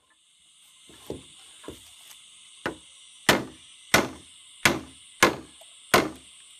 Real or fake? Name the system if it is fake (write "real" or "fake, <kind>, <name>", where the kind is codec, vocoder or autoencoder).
real